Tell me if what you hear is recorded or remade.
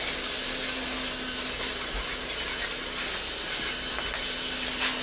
recorded